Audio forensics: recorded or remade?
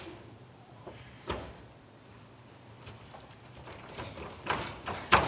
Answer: recorded